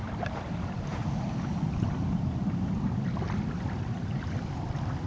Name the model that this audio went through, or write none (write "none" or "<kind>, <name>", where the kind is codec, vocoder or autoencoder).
vocoder, BigVGAN v2